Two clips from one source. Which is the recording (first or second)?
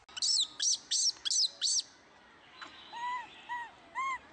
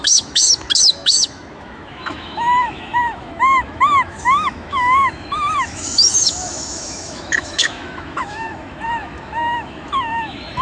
first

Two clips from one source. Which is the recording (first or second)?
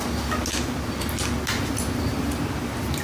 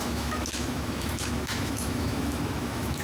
first